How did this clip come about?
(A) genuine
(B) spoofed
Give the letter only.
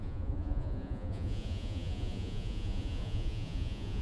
B